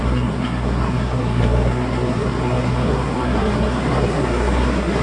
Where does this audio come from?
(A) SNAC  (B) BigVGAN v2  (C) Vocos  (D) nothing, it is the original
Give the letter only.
A